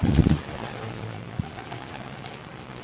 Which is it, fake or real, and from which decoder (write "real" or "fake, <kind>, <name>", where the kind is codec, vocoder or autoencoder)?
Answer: fake, vocoder, Vocos